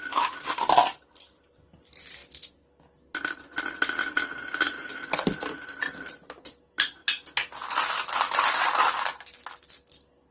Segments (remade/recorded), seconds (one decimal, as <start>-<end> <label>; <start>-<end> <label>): 0.0-2.2 remade; 2.2-4.0 recorded; 4.0-7.0 remade; 7.0-9.5 recorded; 9.5-10.3 remade